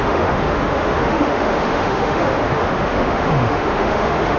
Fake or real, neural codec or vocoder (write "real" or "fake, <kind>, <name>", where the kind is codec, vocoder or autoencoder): fake, autoencoder, DAC-VAE